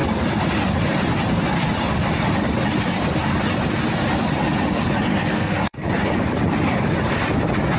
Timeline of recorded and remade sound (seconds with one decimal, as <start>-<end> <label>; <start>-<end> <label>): 0.0-5.1 recorded; 5.1-5.9 remade; 5.9-7.8 recorded